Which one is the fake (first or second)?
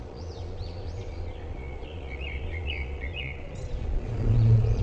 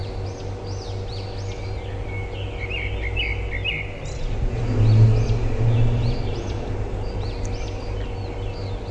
first